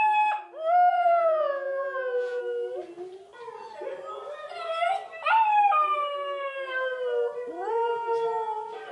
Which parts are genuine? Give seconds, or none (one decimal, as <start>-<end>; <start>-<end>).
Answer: 0.0-0.9; 2.4-8.9